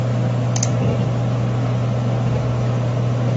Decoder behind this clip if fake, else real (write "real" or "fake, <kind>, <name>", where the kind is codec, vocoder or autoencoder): real